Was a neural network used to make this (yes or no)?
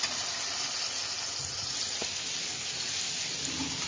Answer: no